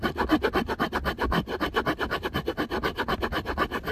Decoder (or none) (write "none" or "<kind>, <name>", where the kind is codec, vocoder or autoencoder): none